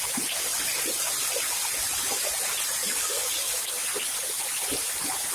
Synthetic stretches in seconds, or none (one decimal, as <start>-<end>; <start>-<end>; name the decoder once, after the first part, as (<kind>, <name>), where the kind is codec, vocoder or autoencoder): 2.8-3.7 (codec, DAC)